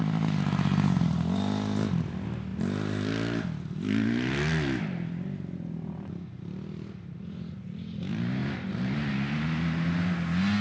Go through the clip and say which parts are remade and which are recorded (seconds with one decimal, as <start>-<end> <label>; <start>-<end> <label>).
0.0-10.6 recorded